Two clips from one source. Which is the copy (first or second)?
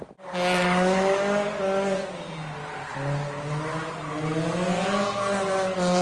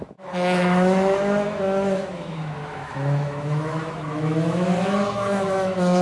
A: second